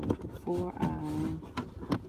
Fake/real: real